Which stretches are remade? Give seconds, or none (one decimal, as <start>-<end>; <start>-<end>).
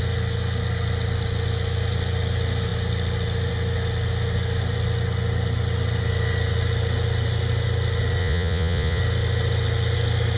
8.2-9.0